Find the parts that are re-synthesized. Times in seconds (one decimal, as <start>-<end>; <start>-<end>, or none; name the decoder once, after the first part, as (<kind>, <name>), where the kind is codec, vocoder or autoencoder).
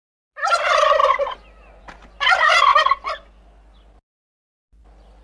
none